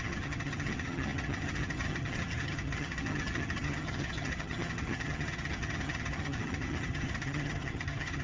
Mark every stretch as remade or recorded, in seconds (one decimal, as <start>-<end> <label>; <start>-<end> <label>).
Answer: 0.0-8.2 remade